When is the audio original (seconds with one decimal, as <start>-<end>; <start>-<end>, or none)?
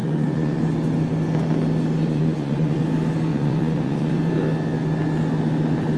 0.7-2.0; 2.8-3.3; 4.3-6.0